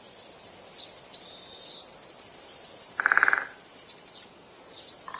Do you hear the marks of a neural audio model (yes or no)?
no